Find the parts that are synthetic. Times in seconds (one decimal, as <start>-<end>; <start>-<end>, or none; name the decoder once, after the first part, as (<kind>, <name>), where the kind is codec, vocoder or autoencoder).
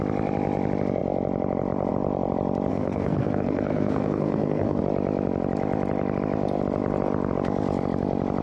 2.7-4.8 (codec, SNAC)